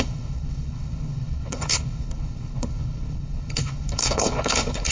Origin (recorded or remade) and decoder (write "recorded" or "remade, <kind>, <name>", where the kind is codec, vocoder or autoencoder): remade, codec, HILCodec